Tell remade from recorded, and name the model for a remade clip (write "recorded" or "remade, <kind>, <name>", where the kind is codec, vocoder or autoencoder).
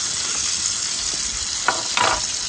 recorded